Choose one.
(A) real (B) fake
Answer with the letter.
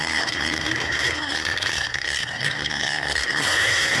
B